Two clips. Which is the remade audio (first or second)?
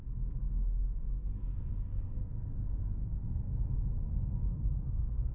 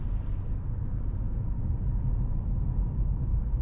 first